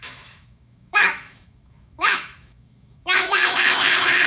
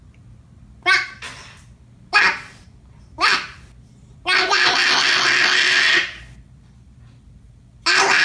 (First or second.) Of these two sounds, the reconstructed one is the first